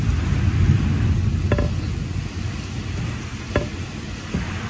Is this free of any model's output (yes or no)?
yes